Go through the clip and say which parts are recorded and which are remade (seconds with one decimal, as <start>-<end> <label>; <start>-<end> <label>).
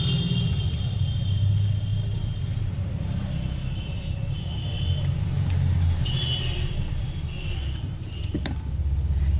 0.0-1.9 remade; 1.9-2.7 recorded; 2.7-9.4 remade